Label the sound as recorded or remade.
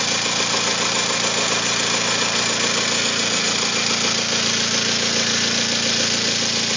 recorded